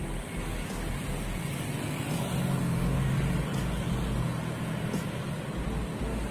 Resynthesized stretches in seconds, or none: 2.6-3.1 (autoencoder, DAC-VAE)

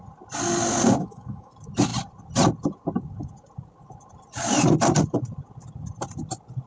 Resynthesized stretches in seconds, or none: 1.0-1.5 (autoencoder, DAC-VAE)

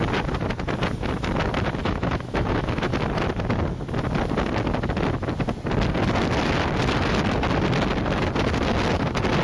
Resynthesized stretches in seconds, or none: 1.8-2.9 (autoencoder, DAC-VAE)

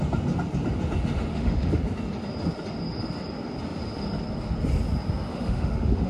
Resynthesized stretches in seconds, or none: 1.3-1.8 (autoencoder, DAC-VAE); 5.3-6.1

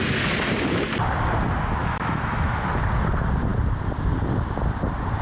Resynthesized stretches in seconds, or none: 1.8-2.6 (autoencoder, DAC-VAE)

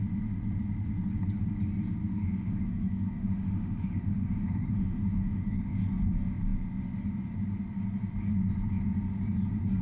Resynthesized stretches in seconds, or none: 2.1-5.8 (autoencoder, DAC-VAE)